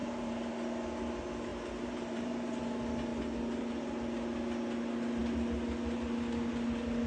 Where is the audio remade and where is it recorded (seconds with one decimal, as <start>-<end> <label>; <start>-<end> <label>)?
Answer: 0.0-0.5 remade; 0.5-1.5 recorded; 1.5-2.6 remade; 2.6-7.1 recorded